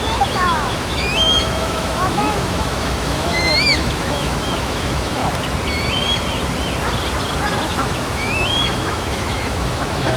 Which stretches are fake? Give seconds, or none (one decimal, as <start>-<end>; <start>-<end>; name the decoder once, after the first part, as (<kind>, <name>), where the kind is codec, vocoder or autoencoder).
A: 0.0-5.2 (autoencoder, DAC-VAE); 7.7-10.2